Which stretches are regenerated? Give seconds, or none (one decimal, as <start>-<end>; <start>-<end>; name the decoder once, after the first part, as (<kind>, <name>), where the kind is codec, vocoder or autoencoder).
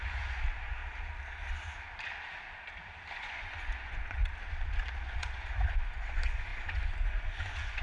0.0-0.8 (vocoder, Vocos); 3.1-4.2; 5.0-7.8